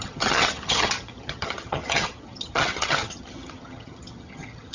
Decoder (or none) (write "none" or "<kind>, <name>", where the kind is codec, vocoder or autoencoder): vocoder, HiFi-GAN